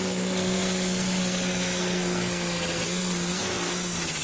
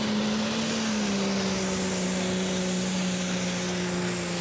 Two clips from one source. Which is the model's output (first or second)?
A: first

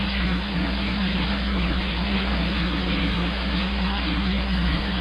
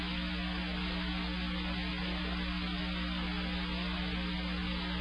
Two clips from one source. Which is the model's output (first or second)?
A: first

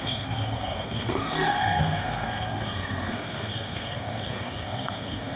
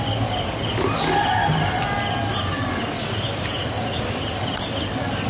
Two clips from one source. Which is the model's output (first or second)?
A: first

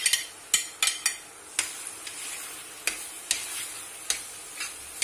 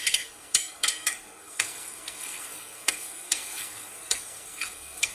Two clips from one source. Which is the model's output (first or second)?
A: second